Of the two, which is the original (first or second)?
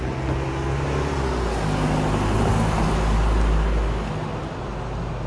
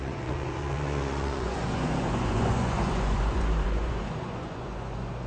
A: first